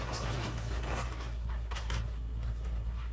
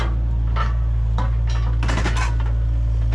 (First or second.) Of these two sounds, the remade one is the first